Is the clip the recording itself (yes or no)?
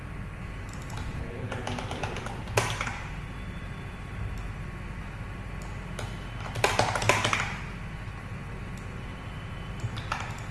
yes